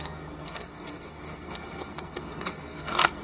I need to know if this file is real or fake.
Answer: fake